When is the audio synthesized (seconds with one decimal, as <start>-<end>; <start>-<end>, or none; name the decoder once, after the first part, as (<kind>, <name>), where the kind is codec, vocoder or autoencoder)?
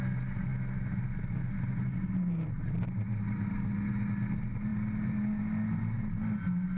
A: none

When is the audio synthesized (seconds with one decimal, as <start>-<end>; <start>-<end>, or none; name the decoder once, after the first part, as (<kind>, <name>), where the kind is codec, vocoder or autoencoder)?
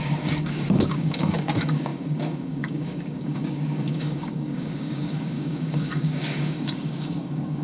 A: 0.0-7.6 (codec, DAC)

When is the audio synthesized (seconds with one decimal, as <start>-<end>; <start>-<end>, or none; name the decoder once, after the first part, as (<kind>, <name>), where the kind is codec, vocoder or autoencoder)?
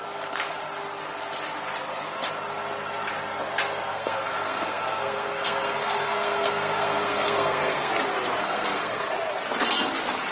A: 3.9-7.9 (codec, SNAC); 8.4-9.1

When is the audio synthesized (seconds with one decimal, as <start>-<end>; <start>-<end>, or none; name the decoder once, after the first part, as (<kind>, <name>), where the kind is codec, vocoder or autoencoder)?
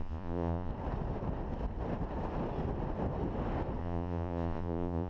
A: 0.0-0.7 (vocoder, Vocos); 3.8-5.1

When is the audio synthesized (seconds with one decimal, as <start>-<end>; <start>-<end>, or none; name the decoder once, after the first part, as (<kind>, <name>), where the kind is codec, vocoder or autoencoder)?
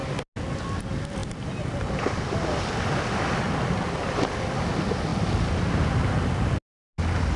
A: none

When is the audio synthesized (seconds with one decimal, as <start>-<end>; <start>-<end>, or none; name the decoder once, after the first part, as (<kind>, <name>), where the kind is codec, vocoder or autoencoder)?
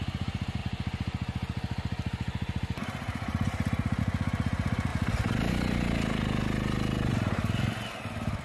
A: none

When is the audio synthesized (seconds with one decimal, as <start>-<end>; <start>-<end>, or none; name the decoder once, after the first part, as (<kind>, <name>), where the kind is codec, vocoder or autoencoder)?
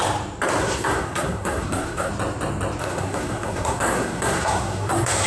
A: 0.6-2.1 (codec, SNAC); 2.8-5.3